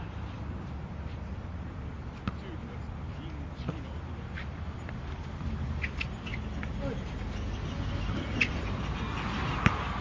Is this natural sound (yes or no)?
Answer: yes